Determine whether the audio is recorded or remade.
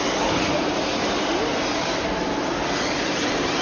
recorded